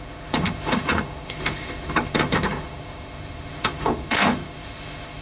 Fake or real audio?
fake